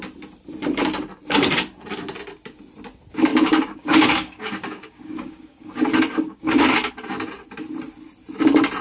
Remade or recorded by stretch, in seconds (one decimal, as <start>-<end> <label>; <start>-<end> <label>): 0.0-3.3 recorded; 3.3-6.9 remade; 6.9-8.8 recorded

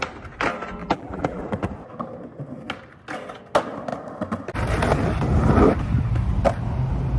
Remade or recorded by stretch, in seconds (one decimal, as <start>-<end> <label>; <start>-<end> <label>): 0.0-0.8 recorded; 0.8-1.4 remade; 1.4-7.2 recorded

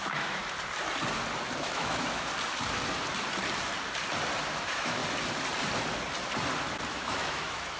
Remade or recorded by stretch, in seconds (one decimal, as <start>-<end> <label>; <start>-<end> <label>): 0.0-0.4 remade; 0.4-1.6 recorded; 1.6-2.3 remade; 2.3-4.5 recorded; 4.5-5.0 remade; 5.0-6.9 recorded; 6.9-7.8 remade

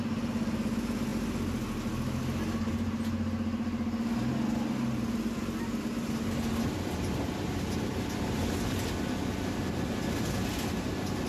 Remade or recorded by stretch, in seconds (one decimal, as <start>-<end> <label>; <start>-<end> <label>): 0.0-11.3 recorded

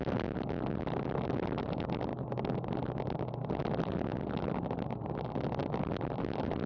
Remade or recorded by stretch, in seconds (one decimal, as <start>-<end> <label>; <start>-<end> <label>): 0.0-6.7 recorded

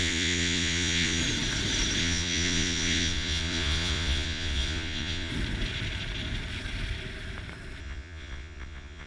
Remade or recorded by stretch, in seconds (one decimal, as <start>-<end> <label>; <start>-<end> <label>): 0.0-1.2 remade; 1.2-2.0 recorded; 2.0-5.3 remade; 5.3-7.8 recorded; 7.8-9.1 remade

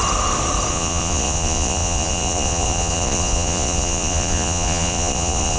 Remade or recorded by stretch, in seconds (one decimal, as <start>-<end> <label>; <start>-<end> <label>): 0.0-0.7 recorded; 0.7-5.6 remade

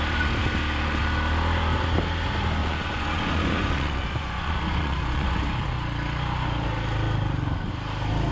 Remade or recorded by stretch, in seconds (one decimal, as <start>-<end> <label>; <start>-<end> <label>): 0.0-2.6 recorded; 2.6-5.4 remade; 5.4-8.3 recorded